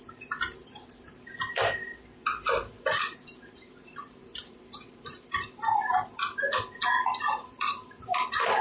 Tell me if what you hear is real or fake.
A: fake